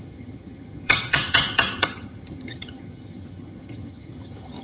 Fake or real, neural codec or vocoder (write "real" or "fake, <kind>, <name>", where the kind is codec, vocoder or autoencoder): fake, vocoder, HiFi-GAN